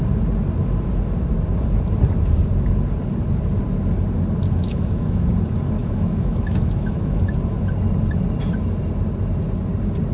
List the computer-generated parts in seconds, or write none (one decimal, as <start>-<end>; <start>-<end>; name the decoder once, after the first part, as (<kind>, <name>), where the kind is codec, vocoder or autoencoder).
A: 4.6-5.3 (autoencoder, DAC-VAE); 5.8-7.2